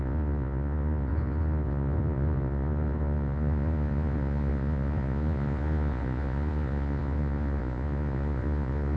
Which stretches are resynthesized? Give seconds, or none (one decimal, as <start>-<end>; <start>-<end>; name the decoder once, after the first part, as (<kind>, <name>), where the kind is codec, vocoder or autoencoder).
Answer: 0.0-9.0 (vocoder, Vocos)